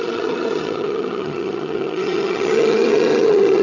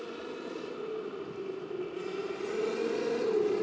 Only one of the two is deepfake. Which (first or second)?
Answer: first